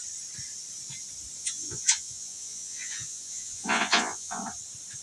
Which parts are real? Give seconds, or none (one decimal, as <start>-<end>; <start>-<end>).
0.0-1.4; 4.4-5.0